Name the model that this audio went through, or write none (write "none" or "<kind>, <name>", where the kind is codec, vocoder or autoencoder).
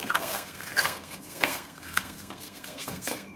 codec, SNAC